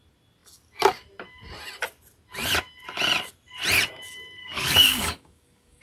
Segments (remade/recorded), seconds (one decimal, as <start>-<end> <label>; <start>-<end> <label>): 0.0-4.4 recorded; 4.4-5.8 remade